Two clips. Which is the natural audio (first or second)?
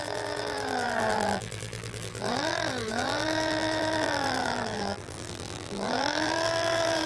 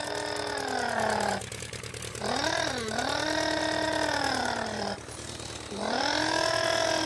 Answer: second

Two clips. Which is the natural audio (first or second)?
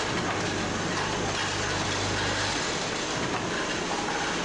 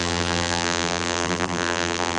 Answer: first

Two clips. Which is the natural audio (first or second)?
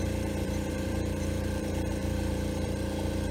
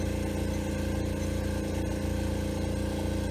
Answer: second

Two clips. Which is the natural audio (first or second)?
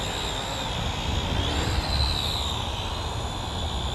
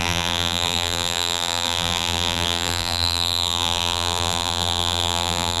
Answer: first